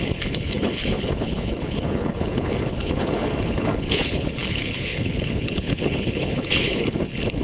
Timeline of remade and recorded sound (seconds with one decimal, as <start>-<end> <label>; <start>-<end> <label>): 0.0-7.4 remade